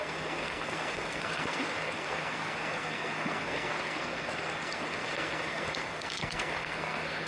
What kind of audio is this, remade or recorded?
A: remade